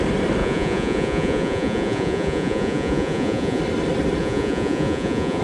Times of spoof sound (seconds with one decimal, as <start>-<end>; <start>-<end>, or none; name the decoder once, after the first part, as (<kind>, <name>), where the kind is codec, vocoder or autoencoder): 0.4-3.6 (vocoder, Vocos); 4.2-5.4